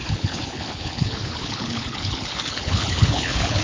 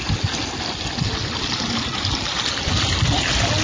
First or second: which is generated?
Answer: first